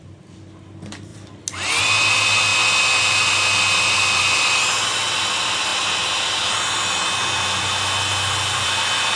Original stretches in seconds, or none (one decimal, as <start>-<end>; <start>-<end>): 0.0-9.2